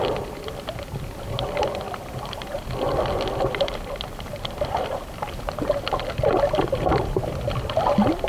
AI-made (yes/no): no